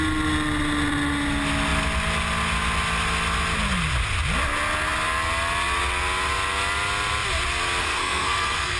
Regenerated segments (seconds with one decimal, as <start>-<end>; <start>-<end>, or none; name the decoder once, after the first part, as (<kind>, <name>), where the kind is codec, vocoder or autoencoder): 7.8-8.8 (codec, SNAC)